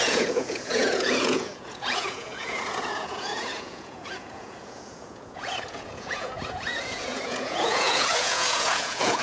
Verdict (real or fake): fake